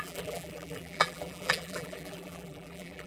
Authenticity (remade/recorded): remade